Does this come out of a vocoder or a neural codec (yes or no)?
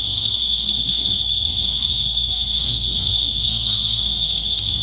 yes